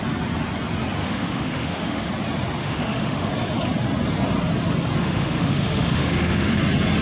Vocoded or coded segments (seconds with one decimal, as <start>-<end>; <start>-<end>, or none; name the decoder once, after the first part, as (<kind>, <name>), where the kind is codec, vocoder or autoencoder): 1.0-2.1 (autoencoder, DAC-VAE); 2.6-3.3; 5.0-6.5